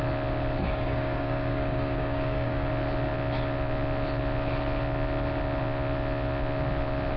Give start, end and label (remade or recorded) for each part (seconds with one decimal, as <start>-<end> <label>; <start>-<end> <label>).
0.0-0.6 recorded; 0.6-2.7 remade; 2.7-7.2 recorded